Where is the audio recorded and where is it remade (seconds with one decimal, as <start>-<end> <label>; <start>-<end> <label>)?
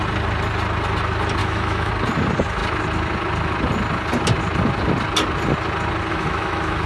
0.0-1.4 recorded; 1.4-1.9 remade; 1.9-6.1 recorded; 6.1-6.9 remade